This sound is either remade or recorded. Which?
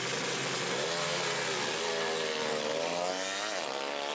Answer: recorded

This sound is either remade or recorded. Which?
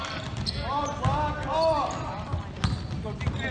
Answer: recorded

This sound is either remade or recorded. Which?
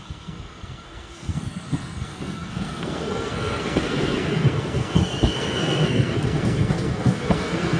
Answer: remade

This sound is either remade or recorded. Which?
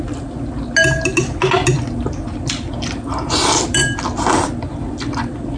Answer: recorded